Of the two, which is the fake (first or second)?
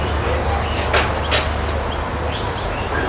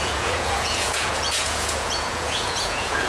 second